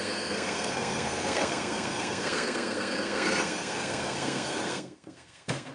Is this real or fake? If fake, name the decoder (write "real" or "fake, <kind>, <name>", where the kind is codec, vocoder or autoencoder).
fake, codec, SNAC